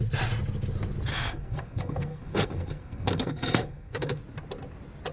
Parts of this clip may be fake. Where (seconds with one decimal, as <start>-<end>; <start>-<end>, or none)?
1.1-4.2